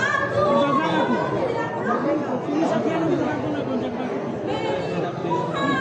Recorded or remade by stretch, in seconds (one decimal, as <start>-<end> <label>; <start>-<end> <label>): 0.0-5.8 recorded

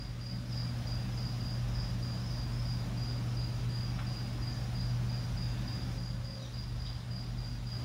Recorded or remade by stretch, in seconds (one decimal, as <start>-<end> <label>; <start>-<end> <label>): 0.0-7.8 recorded

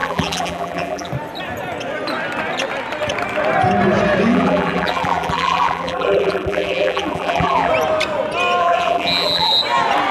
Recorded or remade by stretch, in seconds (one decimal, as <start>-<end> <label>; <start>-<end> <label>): 0.0-1.1 remade; 1.1-4.3 recorded; 4.3-7.7 remade; 7.7-8.6 recorded; 8.6-9.5 remade; 9.5-10.1 recorded

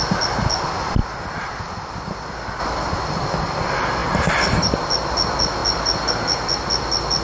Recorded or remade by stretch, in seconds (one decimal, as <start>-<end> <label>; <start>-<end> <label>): 0.0-1.0 recorded; 1.0-2.6 remade; 2.6-4.0 recorded; 4.0-4.7 remade; 4.7-7.2 recorded

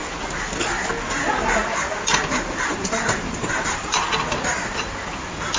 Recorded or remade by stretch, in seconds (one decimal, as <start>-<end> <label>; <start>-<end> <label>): 0.0-1.6 recorded; 1.6-4.0 remade; 4.0-5.6 recorded

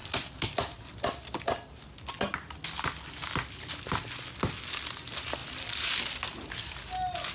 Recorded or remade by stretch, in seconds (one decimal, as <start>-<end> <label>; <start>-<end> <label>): 0.0-1.4 remade; 1.4-5.4 recorded; 5.4-5.9 remade; 5.9-7.3 recorded

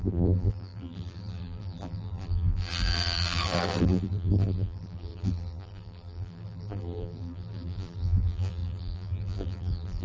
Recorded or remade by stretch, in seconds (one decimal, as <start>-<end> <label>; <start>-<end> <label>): 0.0-10.0 remade

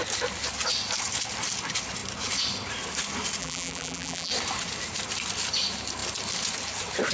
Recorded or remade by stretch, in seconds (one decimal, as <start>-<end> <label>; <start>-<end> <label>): 0.0-3.4 recorded; 3.4-4.3 remade; 4.3-7.1 recorded